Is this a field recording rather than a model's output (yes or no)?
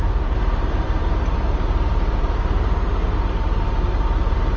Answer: no